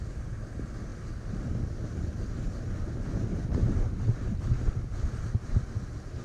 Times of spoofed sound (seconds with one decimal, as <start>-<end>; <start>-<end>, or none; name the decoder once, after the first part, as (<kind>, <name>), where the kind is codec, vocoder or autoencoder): none